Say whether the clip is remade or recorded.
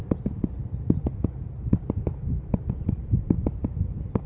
recorded